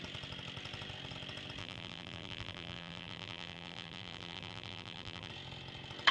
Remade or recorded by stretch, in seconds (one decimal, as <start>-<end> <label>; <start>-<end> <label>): 0.0-1.6 recorded; 1.6-5.3 remade; 5.3-6.1 recorded